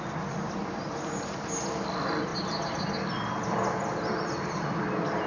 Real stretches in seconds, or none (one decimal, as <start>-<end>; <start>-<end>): 0.0-5.3